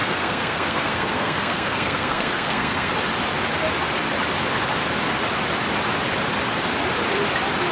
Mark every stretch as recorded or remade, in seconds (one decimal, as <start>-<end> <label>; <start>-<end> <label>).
0.0-2.9 remade; 2.9-7.7 recorded